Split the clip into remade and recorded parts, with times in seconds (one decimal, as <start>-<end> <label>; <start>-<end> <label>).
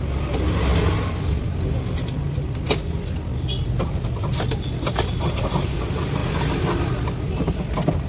0.0-8.1 recorded